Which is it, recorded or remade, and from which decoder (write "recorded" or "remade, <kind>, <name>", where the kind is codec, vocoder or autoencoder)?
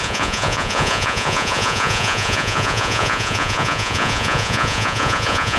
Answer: remade, vocoder, Vocos